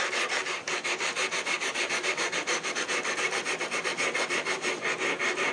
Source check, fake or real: fake